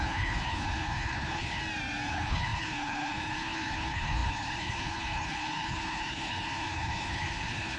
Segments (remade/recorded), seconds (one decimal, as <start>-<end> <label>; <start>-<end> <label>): 0.0-1.6 remade; 1.6-2.1 recorded; 2.1-7.8 remade